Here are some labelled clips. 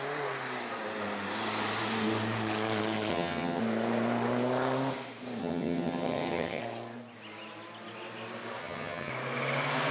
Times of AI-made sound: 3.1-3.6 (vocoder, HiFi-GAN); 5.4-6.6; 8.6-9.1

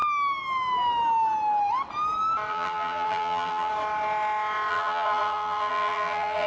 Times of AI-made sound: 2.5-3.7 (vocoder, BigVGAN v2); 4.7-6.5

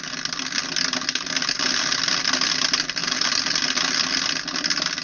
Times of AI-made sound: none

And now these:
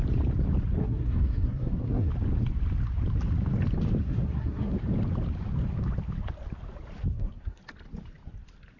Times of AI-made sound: 0.8-2.1 (codec, SNAC); 4.0-4.7; 7.1-7.6